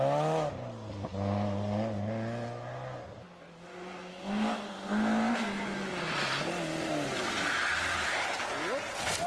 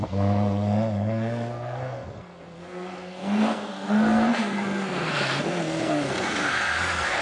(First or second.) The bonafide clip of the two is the first